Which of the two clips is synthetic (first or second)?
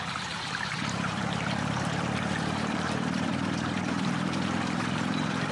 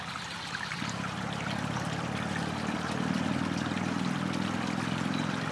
first